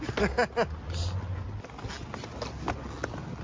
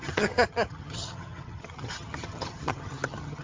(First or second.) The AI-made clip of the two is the second